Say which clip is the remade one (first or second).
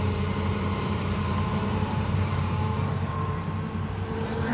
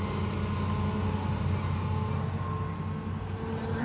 first